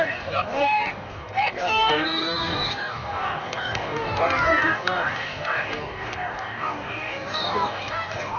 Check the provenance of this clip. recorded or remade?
remade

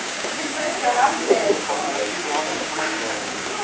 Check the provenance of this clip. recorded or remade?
remade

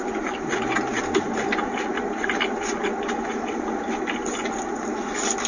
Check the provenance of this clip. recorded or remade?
recorded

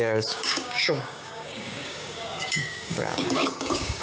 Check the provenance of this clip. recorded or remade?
remade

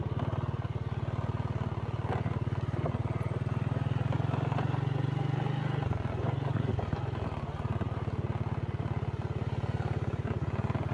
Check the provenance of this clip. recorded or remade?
recorded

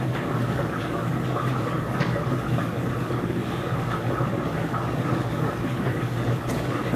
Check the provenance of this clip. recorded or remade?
remade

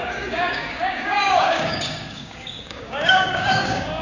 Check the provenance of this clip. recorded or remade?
remade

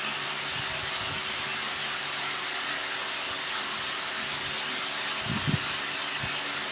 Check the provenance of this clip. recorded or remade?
recorded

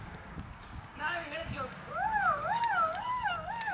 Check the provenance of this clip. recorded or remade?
remade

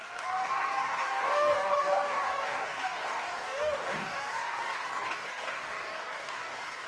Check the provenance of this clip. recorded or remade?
remade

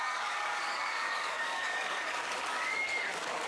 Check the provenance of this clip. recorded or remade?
remade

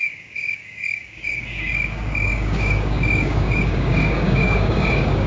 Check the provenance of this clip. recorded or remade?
remade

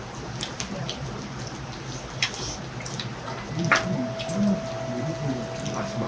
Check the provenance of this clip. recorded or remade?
recorded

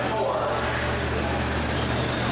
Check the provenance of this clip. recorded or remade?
recorded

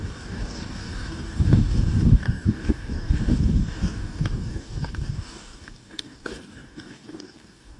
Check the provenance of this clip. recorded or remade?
remade